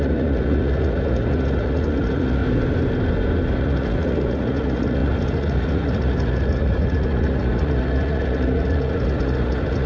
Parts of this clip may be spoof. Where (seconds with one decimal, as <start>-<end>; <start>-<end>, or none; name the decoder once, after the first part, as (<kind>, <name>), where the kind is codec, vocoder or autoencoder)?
0.0-2.4 (vocoder, Vocos); 3.6-9.9